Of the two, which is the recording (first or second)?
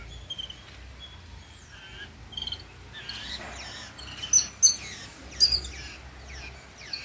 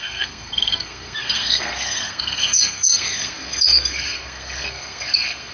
first